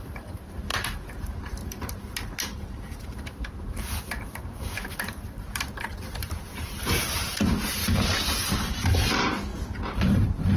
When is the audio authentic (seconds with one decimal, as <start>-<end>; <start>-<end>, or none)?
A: 7.8-8.7; 9.5-10.6